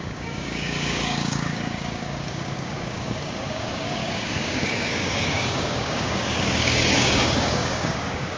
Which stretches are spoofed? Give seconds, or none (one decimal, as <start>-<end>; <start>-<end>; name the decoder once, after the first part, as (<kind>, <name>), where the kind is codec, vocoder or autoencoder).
0.0-8.4 (codec, DAC)